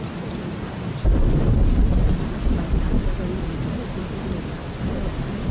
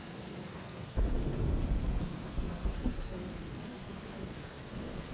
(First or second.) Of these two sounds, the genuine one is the first